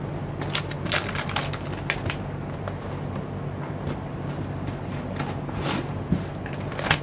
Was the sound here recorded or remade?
recorded